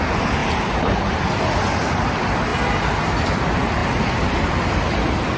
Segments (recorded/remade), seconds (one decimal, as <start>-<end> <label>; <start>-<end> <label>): 0.0-2.5 remade; 2.5-3.2 recorded; 3.2-3.8 remade; 3.8-4.5 recorded; 4.5-5.4 remade